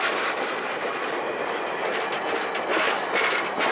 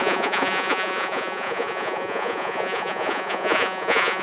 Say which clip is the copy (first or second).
second